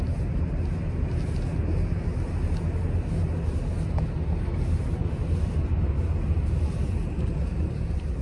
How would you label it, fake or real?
real